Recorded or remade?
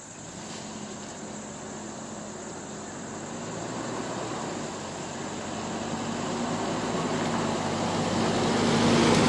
recorded